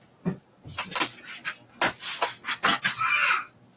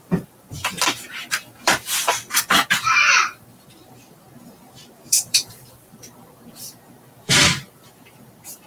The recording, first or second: first